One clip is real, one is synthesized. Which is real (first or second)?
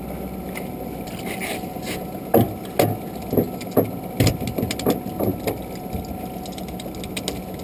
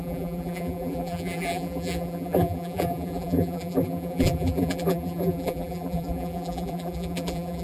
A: first